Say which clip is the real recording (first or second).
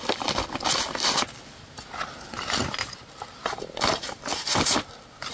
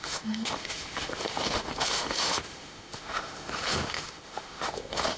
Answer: first